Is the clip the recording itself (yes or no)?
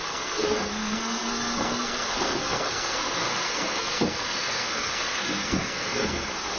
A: no